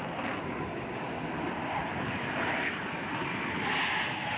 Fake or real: real